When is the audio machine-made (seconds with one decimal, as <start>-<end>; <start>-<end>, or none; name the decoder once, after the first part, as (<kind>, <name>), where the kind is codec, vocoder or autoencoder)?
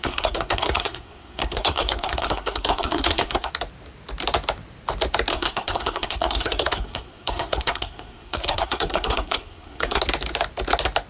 0.0-3.5 (codec, SNAC); 5.3-10.0